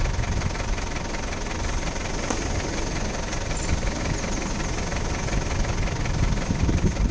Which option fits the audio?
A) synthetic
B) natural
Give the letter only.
B